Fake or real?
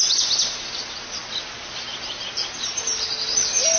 real